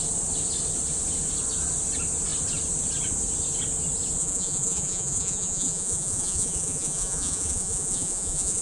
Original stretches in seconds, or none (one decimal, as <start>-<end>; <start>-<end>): 0.0-4.2